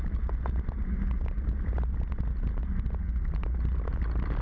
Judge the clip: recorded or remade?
recorded